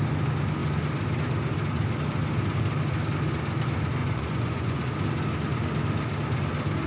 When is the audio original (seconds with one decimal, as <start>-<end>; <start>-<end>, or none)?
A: 0.0-4.0; 4.9-6.9